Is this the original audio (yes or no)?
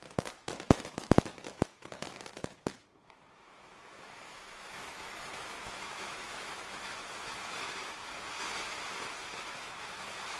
no